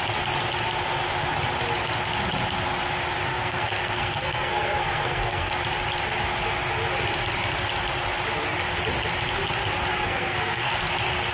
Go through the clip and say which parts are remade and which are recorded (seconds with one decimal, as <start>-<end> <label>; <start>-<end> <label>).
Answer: 0.0-3.3 recorded; 3.3-5.5 remade; 5.5-9.9 recorded; 9.9-10.8 remade; 10.8-11.3 recorded